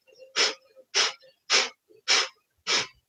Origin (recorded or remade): recorded